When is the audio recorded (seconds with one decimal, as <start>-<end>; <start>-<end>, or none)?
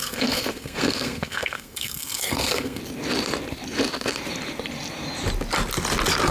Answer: 2.8-6.3